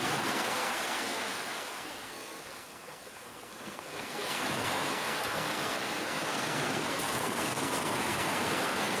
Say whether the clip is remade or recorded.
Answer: remade